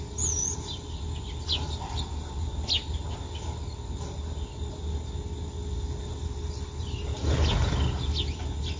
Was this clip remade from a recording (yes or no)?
no